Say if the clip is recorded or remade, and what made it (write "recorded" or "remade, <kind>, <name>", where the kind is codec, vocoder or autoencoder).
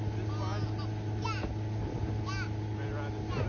recorded